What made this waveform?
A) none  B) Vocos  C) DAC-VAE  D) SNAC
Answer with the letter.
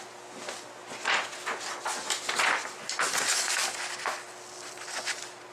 A